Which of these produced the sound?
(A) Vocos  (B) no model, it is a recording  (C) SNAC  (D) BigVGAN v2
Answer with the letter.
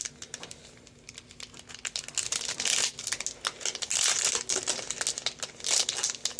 B